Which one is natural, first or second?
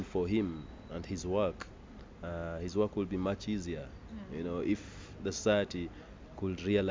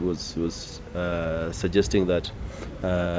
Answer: first